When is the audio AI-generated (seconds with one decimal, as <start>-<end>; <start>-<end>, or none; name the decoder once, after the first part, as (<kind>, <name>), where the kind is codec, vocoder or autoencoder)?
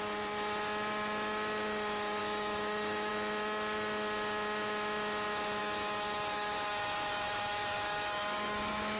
2.2-3.1 (autoencoder, DAC-VAE); 5.6-9.0